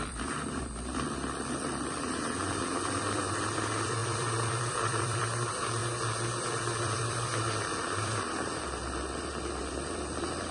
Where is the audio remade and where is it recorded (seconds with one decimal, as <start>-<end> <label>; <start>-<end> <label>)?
0.0-5.8 remade; 5.8-6.8 recorded; 6.8-8.8 remade; 8.8-9.6 recorded; 9.6-10.5 remade